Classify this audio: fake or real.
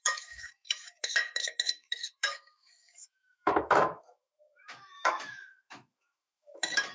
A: fake